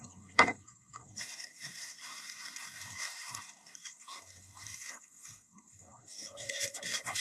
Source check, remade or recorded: remade